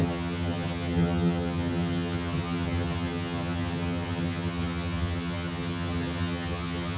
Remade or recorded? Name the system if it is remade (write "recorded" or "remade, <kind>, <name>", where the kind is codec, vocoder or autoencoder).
remade, vocoder, HiFi-GAN